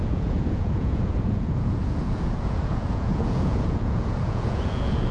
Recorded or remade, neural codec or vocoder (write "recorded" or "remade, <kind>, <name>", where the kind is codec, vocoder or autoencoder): remade, vocoder, Vocos